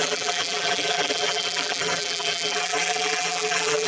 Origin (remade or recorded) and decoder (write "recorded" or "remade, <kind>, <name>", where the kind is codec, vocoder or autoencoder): remade, vocoder, BigVGAN v2